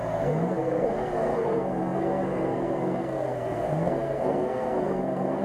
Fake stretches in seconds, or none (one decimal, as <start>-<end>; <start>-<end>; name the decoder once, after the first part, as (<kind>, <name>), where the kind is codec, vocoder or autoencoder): 0.0-5.4 (codec, SNAC)